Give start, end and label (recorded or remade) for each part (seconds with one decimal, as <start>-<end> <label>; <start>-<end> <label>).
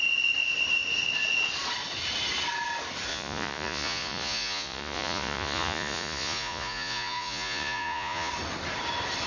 0.0-3.1 recorded; 3.1-8.3 remade; 8.3-9.3 recorded